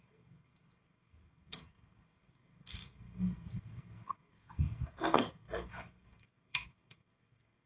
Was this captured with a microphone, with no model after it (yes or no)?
no